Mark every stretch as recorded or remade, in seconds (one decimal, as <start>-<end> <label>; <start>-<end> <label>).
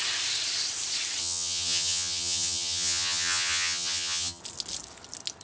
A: 0.0-1.2 recorded; 1.2-4.4 remade; 4.4-5.4 recorded